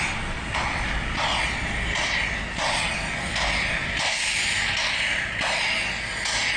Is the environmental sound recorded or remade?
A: recorded